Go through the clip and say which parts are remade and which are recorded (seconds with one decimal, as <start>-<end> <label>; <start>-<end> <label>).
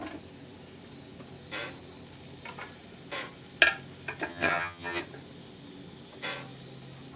0.0-4.3 recorded; 4.3-5.0 remade; 5.0-7.2 recorded